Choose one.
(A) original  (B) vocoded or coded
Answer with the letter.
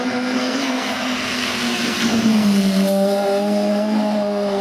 B